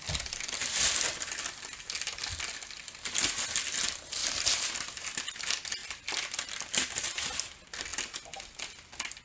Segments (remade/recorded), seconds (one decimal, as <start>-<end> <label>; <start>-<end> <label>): 0.0-4.2 recorded; 4.2-4.7 remade; 4.7-9.2 recorded